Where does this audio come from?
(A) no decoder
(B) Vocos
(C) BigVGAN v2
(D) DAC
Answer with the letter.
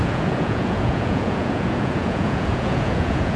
B